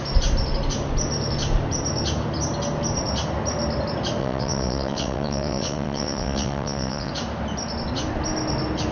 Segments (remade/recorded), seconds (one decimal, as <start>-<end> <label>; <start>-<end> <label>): 0.0-4.2 recorded; 4.2-7.1 remade; 7.1-8.9 recorded